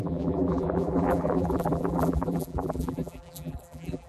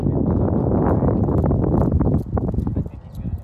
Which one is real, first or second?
second